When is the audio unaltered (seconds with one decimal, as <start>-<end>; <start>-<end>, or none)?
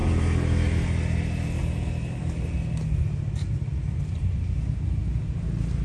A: 0.0-5.8